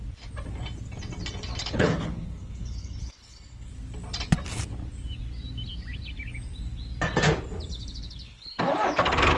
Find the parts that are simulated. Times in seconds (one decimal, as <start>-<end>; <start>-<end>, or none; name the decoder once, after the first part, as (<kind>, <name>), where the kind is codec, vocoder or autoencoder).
1.6-3.7 (codec, HILCodec); 7.7-8.6